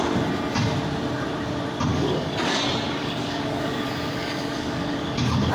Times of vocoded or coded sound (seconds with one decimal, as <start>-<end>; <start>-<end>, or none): 1.9-2.6; 3.0-5.5